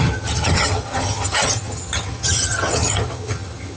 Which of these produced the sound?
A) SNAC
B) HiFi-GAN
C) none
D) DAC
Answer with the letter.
B